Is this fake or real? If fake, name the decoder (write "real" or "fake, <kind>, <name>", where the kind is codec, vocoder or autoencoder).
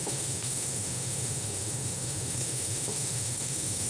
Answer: fake, autoencoder, DAC-VAE